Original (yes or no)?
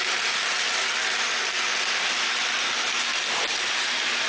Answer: yes